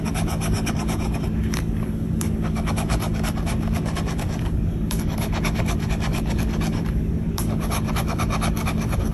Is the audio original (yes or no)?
no